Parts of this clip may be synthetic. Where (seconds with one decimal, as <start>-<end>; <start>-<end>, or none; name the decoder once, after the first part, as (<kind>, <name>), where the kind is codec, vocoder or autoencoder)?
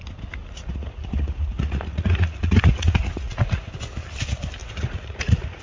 0.4-3.7 (vocoder, Vocos); 4.6-5.6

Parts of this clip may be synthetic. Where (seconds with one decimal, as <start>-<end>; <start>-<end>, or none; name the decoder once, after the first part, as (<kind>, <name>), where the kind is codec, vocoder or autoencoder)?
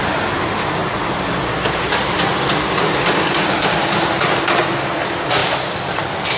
none